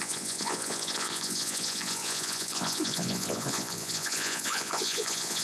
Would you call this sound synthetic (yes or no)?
yes